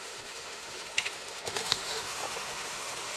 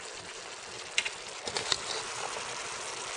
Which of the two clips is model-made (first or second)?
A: first